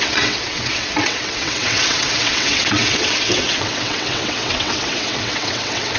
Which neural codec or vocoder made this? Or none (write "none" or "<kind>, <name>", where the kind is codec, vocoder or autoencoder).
vocoder, WaveNeXt